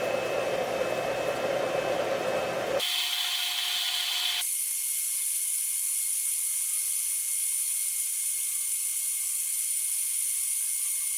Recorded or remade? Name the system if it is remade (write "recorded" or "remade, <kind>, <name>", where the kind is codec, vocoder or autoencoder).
recorded